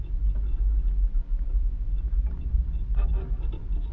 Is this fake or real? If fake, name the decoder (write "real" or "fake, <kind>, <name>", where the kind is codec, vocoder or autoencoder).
real